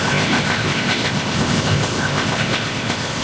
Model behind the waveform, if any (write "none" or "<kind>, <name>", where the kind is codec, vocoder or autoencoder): codec, ZipCodec